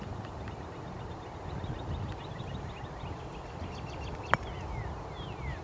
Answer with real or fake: real